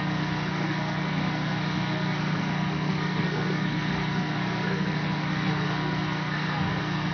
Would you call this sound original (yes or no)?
no